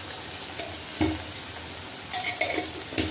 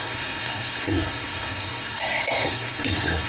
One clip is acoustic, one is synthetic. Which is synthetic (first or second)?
second